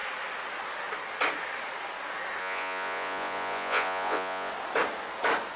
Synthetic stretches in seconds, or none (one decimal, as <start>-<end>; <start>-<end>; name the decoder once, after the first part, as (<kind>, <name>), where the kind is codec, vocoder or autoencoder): 2.4-4.5 (vocoder, Vocos)